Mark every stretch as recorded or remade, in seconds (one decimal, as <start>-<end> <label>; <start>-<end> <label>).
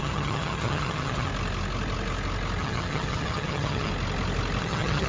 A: 0.0-1.3 remade; 1.3-2.6 recorded; 2.6-3.9 remade; 3.9-4.6 recorded; 4.6-5.1 remade